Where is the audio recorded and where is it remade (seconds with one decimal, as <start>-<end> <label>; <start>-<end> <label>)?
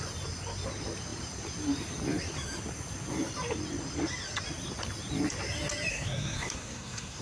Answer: 0.0-5.9 recorded; 5.9-7.2 remade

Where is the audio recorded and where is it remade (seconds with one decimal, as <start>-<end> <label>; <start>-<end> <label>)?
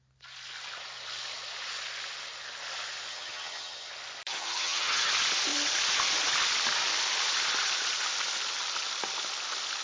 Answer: 0.0-3.1 recorded; 3.1-3.9 remade; 3.9-4.3 recorded; 4.3-5.1 remade; 5.1-9.8 recorded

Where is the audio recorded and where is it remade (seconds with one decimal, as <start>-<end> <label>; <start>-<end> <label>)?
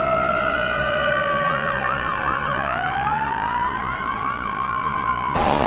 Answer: 0.0-5.7 remade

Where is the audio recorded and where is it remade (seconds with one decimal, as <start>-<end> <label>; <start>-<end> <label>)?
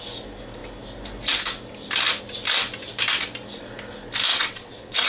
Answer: 0.0-4.3 recorded; 4.3-5.1 remade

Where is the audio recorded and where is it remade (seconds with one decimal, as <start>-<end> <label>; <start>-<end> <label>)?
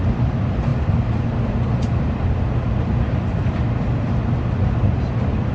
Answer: 0.0-5.5 recorded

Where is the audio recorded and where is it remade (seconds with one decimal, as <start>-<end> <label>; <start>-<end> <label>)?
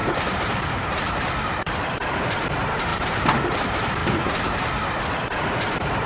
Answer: 0.0-2.5 remade; 2.5-2.9 recorded; 2.9-3.6 remade; 3.6-4.0 recorded; 4.0-5.0 remade; 5.0-6.1 recorded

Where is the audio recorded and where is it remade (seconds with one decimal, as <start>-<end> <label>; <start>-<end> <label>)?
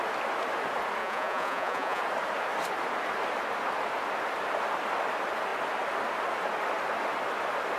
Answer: 0.0-1.0 recorded; 1.0-2.0 remade; 2.0-7.8 recorded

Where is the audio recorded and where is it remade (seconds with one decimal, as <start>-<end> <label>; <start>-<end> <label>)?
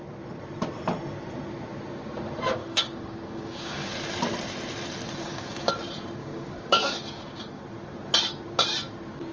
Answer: 0.0-2.6 recorded; 2.6-3.9 remade; 3.9-5.2 recorded; 5.2-5.7 remade; 5.7-6.2 recorded; 6.2-7.6 remade; 7.6-9.3 recorded